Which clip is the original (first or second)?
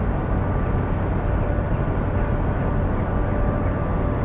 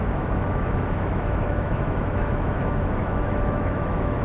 first